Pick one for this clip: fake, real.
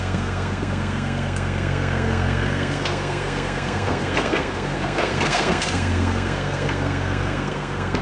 fake